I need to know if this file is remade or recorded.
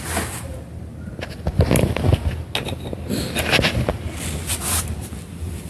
recorded